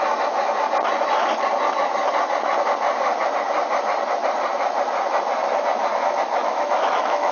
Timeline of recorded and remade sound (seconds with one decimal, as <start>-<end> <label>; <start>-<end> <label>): 0.0-6.4 recorded; 6.4-7.3 remade